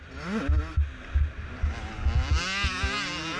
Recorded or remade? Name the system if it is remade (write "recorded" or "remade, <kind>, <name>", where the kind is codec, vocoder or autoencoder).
recorded